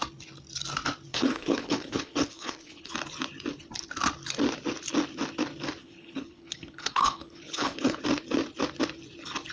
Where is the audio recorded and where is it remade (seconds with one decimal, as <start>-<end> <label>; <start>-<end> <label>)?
0.0-1.1 recorded; 1.1-2.9 remade; 2.9-5.8 recorded; 5.8-8.0 remade; 8.0-9.5 recorded